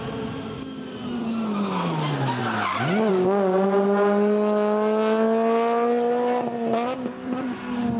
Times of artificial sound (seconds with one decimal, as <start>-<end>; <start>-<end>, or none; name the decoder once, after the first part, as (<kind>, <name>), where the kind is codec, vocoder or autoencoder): none